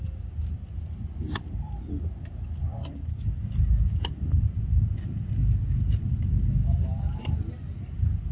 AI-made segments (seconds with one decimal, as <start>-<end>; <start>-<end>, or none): none